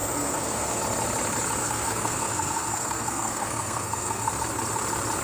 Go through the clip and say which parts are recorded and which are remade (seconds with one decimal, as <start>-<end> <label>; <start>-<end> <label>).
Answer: 0.0-0.8 remade; 0.8-1.6 recorded; 1.6-4.3 remade; 4.3-5.2 recorded